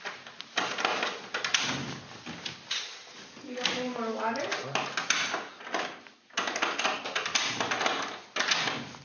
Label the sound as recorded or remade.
recorded